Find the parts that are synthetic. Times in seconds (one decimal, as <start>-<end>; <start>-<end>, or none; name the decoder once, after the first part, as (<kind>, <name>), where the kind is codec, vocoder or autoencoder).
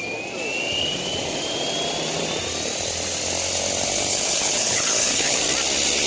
4.1-5.4 (codec, HILCodec)